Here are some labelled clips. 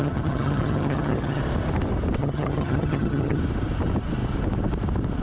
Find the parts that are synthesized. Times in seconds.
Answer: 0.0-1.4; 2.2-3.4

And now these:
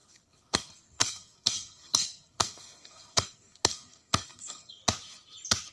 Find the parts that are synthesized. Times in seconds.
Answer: 0.0-4.8

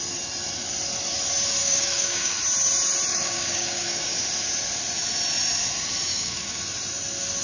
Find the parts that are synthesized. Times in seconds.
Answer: 1.6-2.4; 3.1-4.1; 6.1-6.6

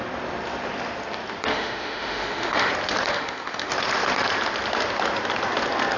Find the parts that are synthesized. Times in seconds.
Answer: 1.5-2.7; 3.1-3.7

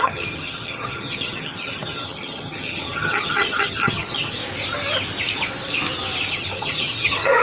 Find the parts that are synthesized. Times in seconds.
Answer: 0.0-4.4; 6.3-7.4

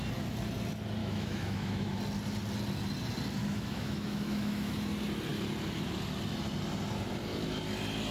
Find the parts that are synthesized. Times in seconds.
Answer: 1.0-2.0; 3.4-4.7